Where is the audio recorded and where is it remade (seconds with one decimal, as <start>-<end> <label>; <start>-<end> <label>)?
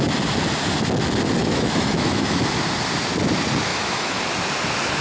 0.0-1.4 recorded; 1.4-2.4 remade; 2.4-3.7 recorded; 3.7-4.2 remade; 4.2-5.0 recorded